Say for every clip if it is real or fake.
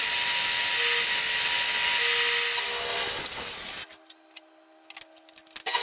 real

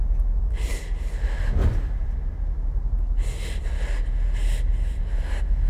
real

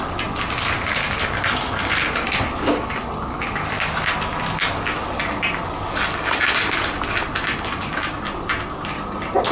real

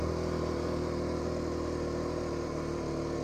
real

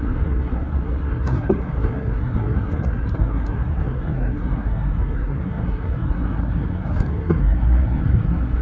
fake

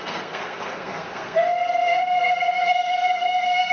fake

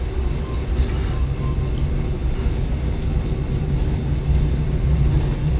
real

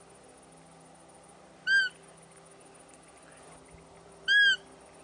real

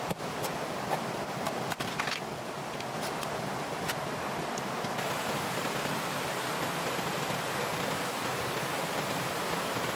real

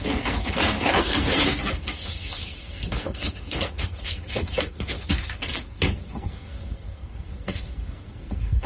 fake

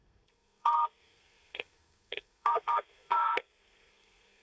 fake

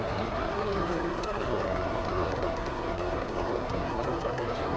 fake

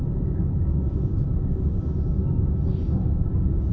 real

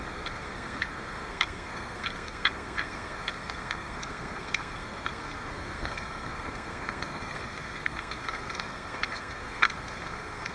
fake